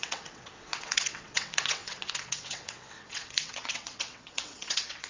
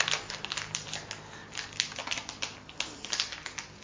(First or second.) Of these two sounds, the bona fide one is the second